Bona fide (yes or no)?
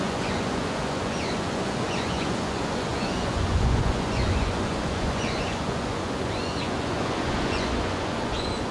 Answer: no